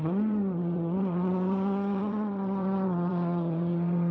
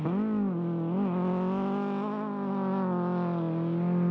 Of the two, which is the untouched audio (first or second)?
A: second